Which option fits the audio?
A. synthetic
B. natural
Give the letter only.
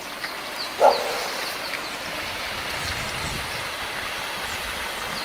B